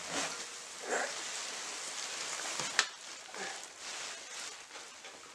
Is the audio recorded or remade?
recorded